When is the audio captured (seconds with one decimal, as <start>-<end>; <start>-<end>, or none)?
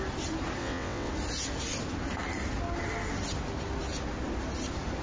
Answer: 0.0-0.6; 1.1-5.0